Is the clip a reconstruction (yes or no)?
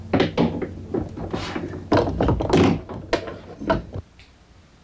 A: no